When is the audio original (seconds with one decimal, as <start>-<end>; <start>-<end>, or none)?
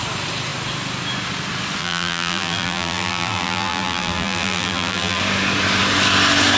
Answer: 0.0-1.8; 5.2-6.6